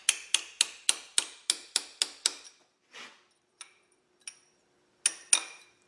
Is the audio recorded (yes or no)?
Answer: yes